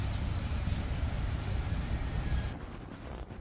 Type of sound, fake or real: real